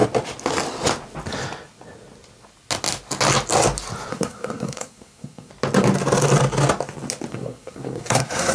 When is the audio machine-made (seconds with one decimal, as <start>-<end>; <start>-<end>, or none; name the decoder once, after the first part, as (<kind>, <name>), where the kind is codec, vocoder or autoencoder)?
4.1-5.5 (codec, SNAC); 7.3-8.5